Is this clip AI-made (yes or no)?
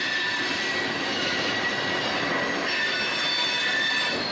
no